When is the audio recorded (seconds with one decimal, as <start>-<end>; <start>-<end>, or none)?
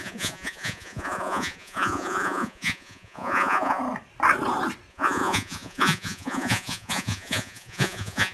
3.8-4.9